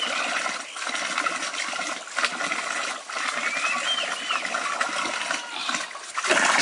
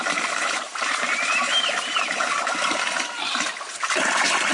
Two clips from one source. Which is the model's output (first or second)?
second